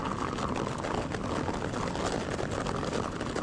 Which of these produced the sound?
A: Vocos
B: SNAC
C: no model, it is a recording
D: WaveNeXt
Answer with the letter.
C